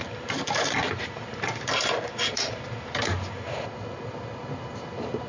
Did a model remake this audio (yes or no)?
yes